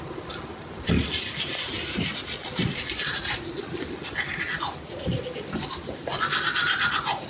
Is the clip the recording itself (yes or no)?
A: yes